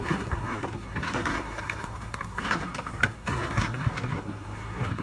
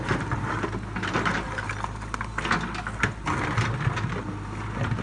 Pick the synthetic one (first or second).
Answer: first